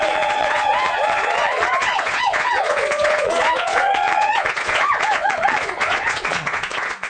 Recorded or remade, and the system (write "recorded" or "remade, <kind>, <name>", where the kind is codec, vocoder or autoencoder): remade, vocoder, Vocos